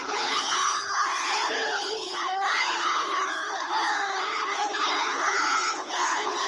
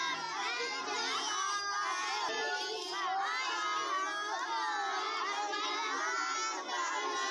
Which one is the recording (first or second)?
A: second